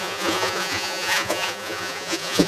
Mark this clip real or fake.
fake